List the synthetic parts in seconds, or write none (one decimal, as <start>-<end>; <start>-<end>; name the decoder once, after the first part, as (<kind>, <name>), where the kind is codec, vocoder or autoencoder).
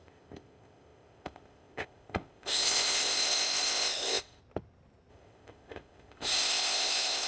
0.0-4.4 (codec, ZipCodec); 5.1-7.3